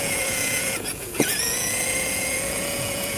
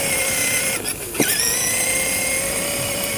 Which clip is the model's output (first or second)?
first